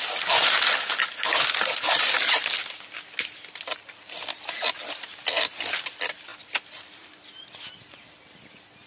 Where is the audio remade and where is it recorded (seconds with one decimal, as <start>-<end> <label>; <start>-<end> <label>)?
0.0-8.9 recorded